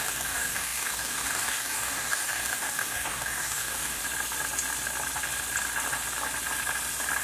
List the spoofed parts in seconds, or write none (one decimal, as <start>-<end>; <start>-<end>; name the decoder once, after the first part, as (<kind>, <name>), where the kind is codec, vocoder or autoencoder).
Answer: 0.0-4.0 (codec, DAC)